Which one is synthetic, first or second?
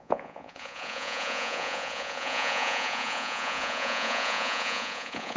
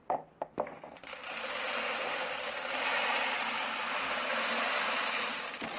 first